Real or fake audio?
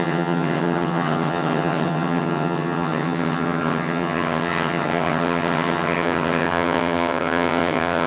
fake